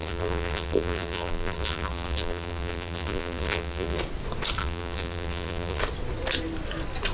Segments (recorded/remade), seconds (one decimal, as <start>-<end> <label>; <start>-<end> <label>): 0.0-4.0 remade; 4.0-4.6 recorded; 4.6-5.8 remade; 5.8-7.1 recorded